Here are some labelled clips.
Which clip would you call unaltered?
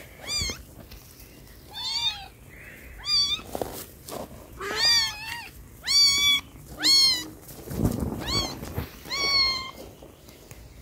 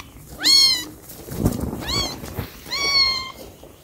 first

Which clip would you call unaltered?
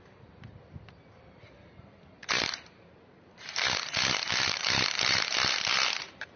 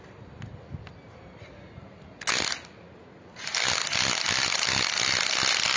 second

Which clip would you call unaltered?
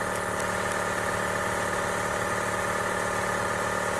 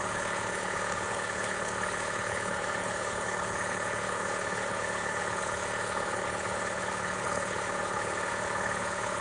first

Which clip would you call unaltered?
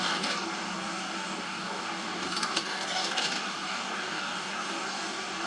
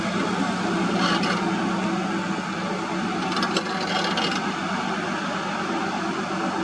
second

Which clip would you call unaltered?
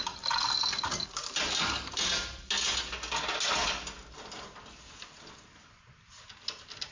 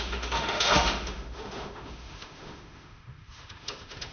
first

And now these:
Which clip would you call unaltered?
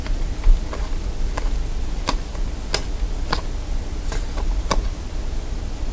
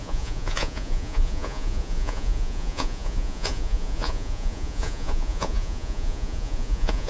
first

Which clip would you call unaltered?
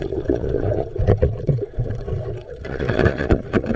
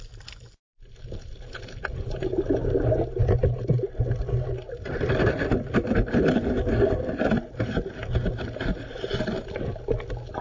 second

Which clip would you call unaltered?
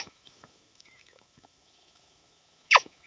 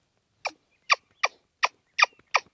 second